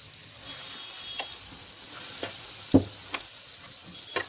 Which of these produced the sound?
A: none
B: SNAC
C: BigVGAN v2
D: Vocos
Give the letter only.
A